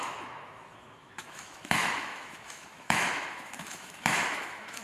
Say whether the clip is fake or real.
fake